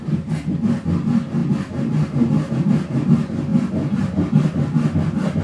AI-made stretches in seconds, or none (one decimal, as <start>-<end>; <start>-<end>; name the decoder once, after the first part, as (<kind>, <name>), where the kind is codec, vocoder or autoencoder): none